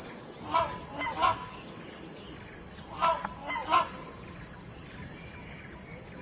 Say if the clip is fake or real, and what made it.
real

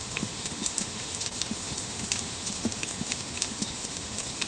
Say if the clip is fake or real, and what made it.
fake, autoencoder, DAC-VAE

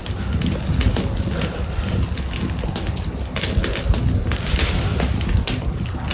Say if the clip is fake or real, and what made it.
real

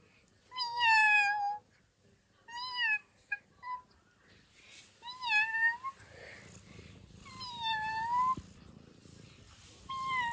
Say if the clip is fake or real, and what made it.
real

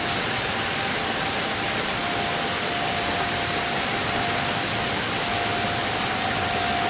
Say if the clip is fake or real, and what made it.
real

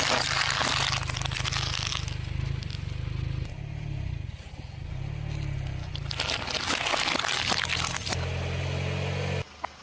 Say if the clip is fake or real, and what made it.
real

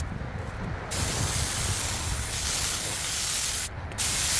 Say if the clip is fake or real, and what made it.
real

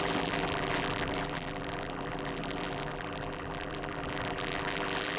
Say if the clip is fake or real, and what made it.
fake, vocoder, BigVGAN v2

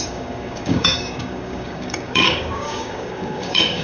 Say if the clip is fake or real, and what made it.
fake, codec, DAC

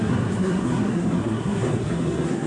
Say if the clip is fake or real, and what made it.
fake, codec, SNAC